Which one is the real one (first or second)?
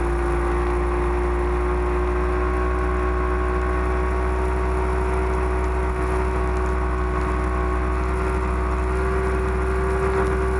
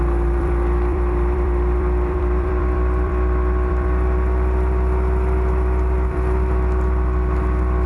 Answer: first